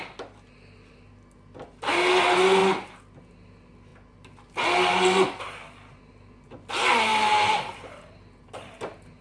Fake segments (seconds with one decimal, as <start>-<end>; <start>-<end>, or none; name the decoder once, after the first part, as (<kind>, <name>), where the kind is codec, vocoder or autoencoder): none